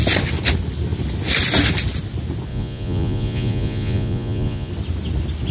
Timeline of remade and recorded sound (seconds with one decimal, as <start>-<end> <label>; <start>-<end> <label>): 0.0-2.5 recorded; 2.5-4.7 remade; 4.7-5.5 recorded